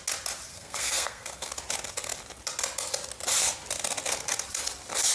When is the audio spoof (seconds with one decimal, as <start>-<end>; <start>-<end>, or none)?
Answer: 0.5-1.5